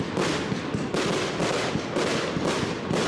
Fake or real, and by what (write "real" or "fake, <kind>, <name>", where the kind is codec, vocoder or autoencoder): real